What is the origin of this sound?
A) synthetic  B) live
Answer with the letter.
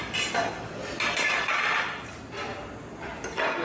B